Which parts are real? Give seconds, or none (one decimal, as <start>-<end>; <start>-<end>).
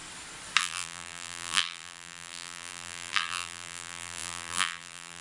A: 0.0-0.6